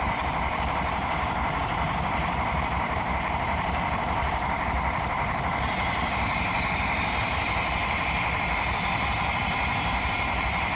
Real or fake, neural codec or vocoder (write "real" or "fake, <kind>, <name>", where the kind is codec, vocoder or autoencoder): fake, vocoder, BigVGAN v2